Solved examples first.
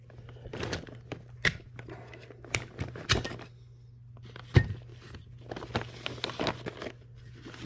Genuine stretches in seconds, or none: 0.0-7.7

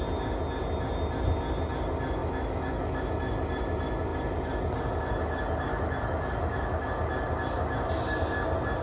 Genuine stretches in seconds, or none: 0.0-2.2; 3.1-5.7; 6.9-8.8